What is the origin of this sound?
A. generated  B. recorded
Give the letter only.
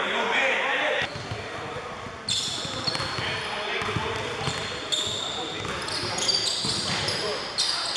B